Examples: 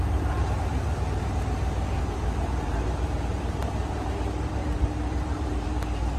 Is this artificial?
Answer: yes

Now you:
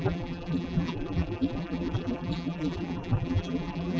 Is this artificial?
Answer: yes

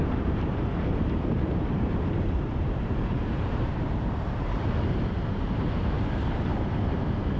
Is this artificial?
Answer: yes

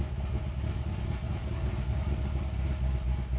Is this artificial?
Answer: no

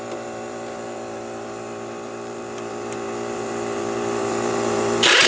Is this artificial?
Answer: yes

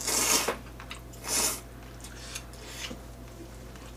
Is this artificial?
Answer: no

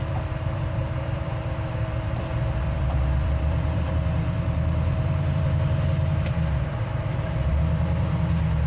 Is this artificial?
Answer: yes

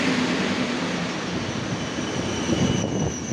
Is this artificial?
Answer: no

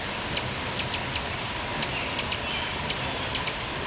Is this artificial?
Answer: no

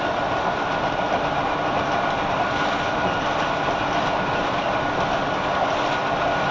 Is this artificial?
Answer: yes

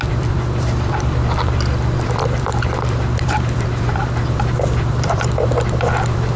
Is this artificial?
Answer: yes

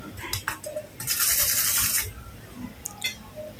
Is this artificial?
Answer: no